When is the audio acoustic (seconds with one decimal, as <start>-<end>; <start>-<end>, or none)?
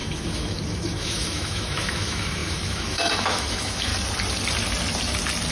3.9-5.5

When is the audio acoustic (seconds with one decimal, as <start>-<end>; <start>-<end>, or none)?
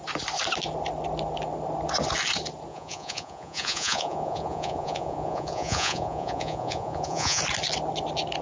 0.0-2.7; 7.4-8.4